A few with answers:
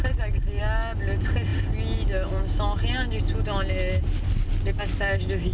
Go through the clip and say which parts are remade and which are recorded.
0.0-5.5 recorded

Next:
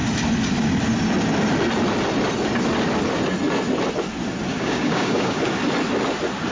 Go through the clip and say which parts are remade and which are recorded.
0.0-4.5 recorded; 4.5-5.4 remade; 5.4-6.5 recorded

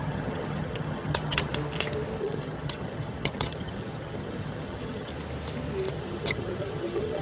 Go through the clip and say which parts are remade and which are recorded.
0.0-1.5 remade; 1.5-2.2 recorded; 2.2-5.1 remade; 5.1-5.9 recorded; 5.9-7.2 remade

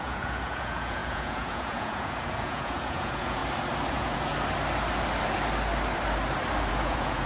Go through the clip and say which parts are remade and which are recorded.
0.0-3.4 remade; 3.4-3.9 recorded; 3.9-4.3 remade; 4.3-6.7 recorded; 6.7-7.3 remade

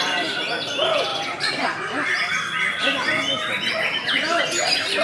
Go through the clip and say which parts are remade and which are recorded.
0.0-1.1 remade; 1.1-3.7 recorded; 3.7-5.0 remade